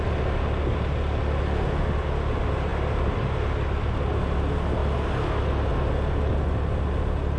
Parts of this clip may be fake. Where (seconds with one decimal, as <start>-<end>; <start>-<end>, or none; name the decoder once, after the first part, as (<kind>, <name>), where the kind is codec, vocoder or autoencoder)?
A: none